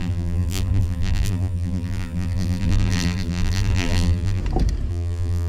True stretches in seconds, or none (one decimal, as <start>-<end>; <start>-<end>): 4.4-4.9

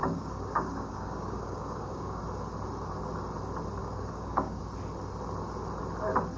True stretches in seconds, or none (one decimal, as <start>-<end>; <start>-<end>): 2.2-3.8; 4.6-6.4

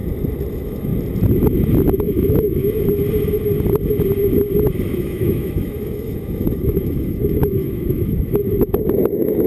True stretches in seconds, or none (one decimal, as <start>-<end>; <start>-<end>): 0.0-0.5; 0.9-2.0; 2.6-5.0